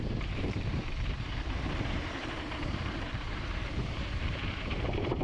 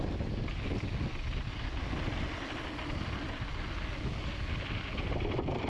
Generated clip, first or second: first